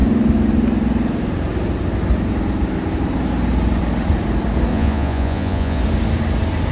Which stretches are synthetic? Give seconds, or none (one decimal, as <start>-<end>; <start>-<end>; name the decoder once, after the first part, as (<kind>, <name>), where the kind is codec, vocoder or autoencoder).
4.7-5.8 (vocoder, Vocos)